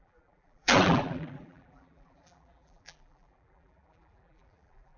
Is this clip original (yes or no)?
no